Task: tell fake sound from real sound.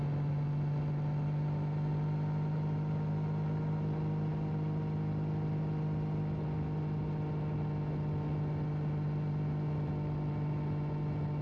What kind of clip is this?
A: real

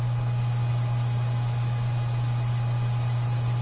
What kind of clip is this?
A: real